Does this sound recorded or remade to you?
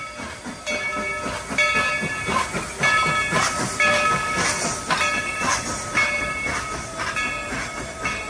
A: recorded